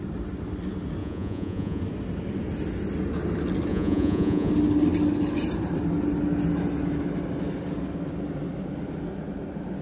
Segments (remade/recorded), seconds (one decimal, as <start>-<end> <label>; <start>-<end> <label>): 0.0-1.0 recorded; 1.0-1.8 remade; 1.8-3.7 recorded; 3.7-4.5 remade; 4.5-9.8 recorded